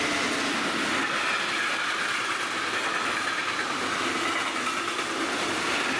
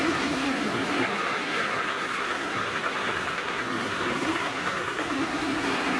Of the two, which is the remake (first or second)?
second